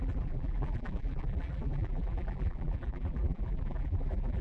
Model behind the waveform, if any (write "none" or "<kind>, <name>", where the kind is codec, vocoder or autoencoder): vocoder, BigVGAN v2